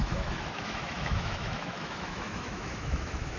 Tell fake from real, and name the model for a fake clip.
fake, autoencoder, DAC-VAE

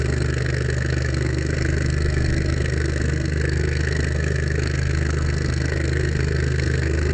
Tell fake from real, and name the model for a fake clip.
fake, codec, SNAC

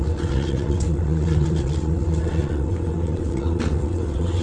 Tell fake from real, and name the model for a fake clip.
fake, vocoder, WaveNeXt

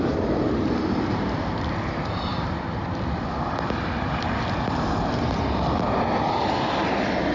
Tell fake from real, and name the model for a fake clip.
fake, vocoder, BigVGAN v2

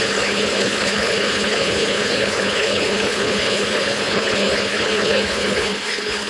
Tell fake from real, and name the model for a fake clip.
fake, codec, HILCodec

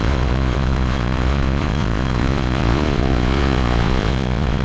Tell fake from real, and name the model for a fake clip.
fake, vocoder, Vocos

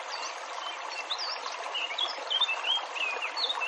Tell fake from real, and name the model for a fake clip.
real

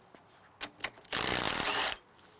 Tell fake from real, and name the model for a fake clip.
real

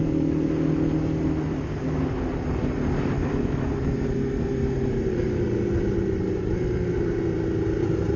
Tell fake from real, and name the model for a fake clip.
real